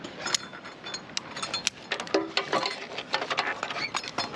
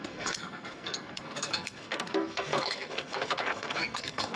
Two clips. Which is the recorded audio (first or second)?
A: first